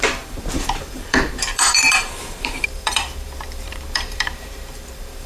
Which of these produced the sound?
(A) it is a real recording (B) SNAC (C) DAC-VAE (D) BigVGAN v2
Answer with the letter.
D